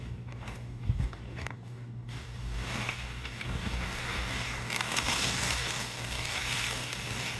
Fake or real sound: fake